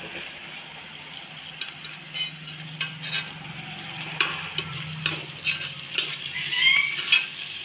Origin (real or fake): real